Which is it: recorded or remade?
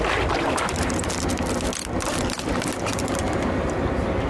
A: recorded